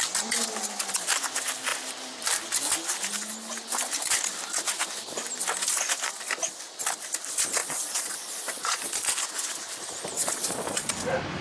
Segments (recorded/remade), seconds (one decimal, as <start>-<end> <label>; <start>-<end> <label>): 0.0-7.6 recorded; 7.6-9.0 remade; 9.0-10.2 recorded; 10.2-10.9 remade; 10.9-11.4 recorded